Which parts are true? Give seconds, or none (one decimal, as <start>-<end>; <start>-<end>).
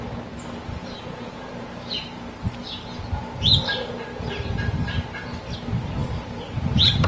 0.0-0.8; 1.7-2.6; 3.1-7.1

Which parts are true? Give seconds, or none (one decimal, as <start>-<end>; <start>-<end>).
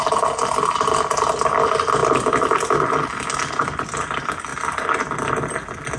0.0-2.0; 3.5-6.0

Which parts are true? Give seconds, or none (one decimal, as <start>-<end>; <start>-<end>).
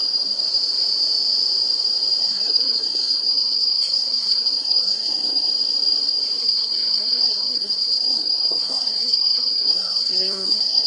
0.0-2.2; 5.5-6.4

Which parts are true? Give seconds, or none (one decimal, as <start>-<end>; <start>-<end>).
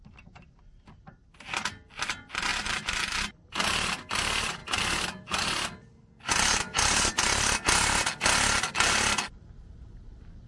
0.0-10.5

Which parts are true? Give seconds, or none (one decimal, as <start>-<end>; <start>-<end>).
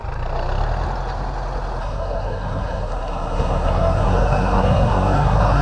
0.0-1.8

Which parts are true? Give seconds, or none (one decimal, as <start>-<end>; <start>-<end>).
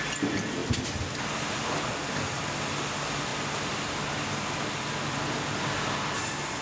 0.0-6.6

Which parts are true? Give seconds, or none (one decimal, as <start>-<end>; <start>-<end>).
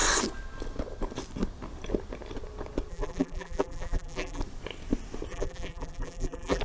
0.0-2.9; 4.4-5.3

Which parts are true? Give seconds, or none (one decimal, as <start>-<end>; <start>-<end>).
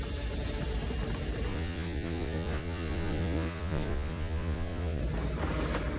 0.0-1.5; 5.0-6.0